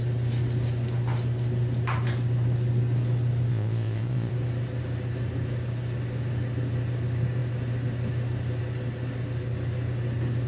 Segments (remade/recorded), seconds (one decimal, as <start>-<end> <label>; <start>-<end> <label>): 0.0-3.5 recorded; 3.5-4.3 remade; 4.3-10.5 recorded

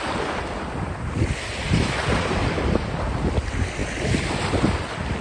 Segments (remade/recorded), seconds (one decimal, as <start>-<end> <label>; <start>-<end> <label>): 0.0-1.5 recorded; 1.5-2.4 remade; 2.4-5.2 recorded

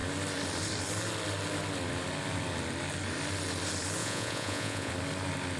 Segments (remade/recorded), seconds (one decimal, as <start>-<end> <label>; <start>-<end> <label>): 0.0-4.0 recorded; 4.0-4.9 remade; 4.9-5.6 recorded